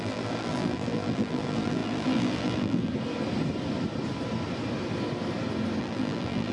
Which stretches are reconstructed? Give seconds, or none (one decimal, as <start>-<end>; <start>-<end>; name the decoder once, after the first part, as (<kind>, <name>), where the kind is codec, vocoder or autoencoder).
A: 0.0-2.9 (vocoder, BigVGAN v2); 5.8-6.5